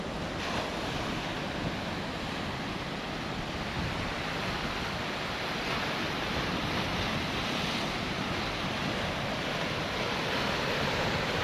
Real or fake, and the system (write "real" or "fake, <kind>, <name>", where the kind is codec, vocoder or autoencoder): real